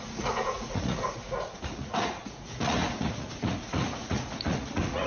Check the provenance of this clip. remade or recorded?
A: remade